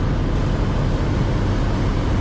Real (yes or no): yes